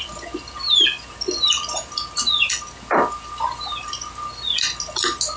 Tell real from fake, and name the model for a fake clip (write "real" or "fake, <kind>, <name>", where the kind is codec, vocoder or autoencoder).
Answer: real